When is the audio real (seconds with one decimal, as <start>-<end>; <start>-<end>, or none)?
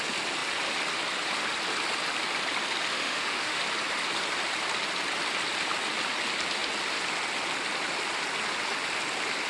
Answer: 0.0-2.9; 3.6-9.5